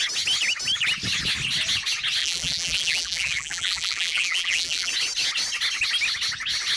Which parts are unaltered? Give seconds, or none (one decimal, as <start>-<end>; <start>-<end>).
0.0-2.2; 4.9-6.8